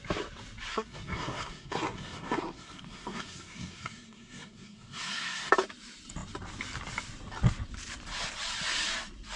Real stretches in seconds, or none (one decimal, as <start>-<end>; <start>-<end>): 0.0-0.7; 5.5-9.4